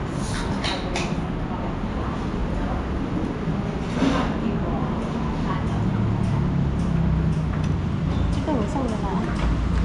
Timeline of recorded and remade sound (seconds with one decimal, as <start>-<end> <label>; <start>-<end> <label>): 0.0-9.8 recorded

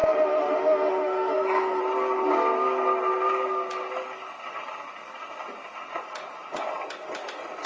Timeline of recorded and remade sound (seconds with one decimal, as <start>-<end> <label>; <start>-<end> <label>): 0.0-1.8 remade; 1.8-7.7 recorded

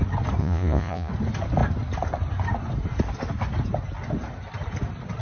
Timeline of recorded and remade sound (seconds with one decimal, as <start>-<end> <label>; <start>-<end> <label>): 0.0-0.4 recorded; 0.4-1.1 remade; 1.1-5.2 recorded

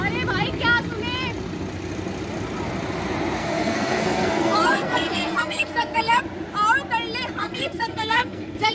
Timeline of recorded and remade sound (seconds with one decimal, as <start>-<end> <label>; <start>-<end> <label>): 0.0-3.4 recorded; 3.4-6.2 remade; 6.2-7.4 recorded; 7.4-8.7 remade

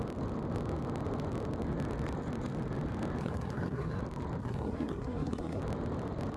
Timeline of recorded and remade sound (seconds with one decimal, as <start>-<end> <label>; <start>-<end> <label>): 0.0-3.2 recorded; 3.2-4.0 remade; 4.0-4.4 recorded; 4.4-5.6 remade; 5.6-6.4 recorded

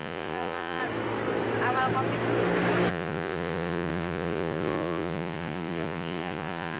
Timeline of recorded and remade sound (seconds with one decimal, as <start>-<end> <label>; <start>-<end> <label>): 0.0-0.8 remade; 0.8-2.9 recorded; 2.9-6.8 remade